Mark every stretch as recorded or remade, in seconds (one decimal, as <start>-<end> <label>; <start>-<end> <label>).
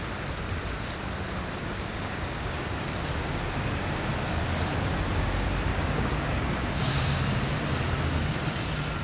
0.0-1.6 recorded; 1.6-2.9 remade; 2.9-5.7 recorded; 5.7-7.2 remade; 7.2-9.0 recorded